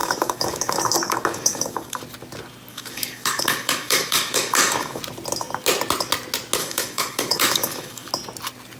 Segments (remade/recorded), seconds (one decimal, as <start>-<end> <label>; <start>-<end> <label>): 0.0-2.0 remade; 2.0-2.7 recorded; 2.7-5.0 remade; 5.0-6.6 recorded; 6.6-8.1 remade; 8.1-8.8 recorded